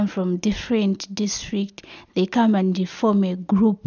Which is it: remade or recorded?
recorded